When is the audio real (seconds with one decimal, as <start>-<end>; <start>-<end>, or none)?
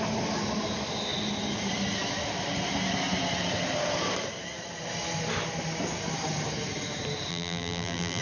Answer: 0.0-7.3